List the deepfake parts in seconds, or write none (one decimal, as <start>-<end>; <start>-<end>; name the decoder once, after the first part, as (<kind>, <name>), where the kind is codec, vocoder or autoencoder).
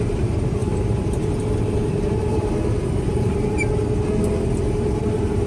0.0-3.8 (vocoder, BigVGAN v2); 5.0-5.5